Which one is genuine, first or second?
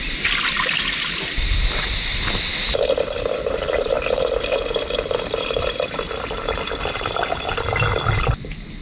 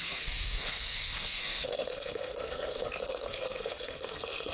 first